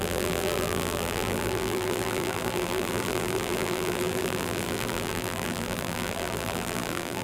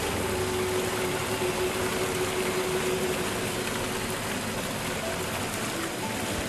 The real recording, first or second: second